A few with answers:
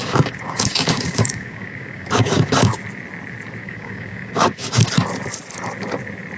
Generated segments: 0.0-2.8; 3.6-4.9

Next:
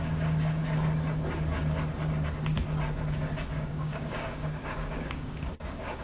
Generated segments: 0.0-0.6; 3.5-6.0

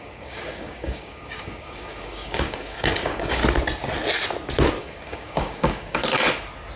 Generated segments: 0.0-3.4; 4.8-6.0

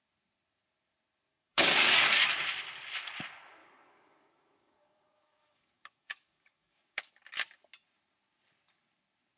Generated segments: 1.3-2.4; 3.6-7.1

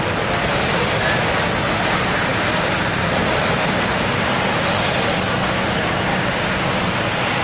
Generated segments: 6.1-6.8

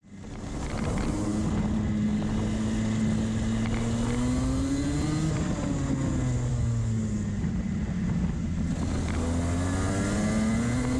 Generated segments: 6.5-7.0

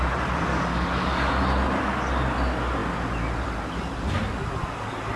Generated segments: 0.5-1.3

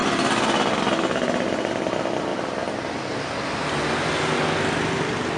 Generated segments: none